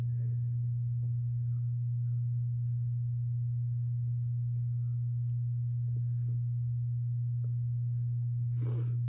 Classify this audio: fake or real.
real